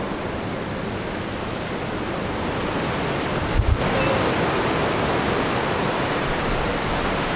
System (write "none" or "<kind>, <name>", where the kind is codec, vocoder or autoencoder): none